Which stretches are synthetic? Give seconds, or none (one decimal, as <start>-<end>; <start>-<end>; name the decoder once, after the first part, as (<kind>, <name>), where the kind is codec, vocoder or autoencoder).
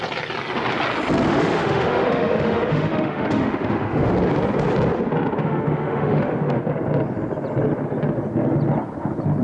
1.3-4.1 (autoencoder, DAC-VAE); 5.4-6.6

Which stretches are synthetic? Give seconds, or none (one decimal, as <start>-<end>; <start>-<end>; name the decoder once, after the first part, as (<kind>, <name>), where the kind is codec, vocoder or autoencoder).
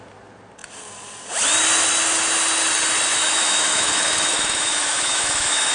3.2-5.7 (autoencoder, DAC-VAE)